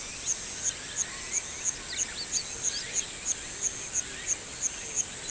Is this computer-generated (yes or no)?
no